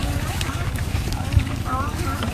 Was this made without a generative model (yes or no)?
no